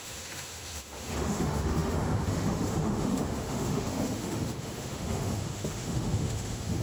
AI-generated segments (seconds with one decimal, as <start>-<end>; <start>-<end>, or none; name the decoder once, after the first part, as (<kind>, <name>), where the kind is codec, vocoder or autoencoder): 0.0-6.8 (autoencoder, DAC-VAE)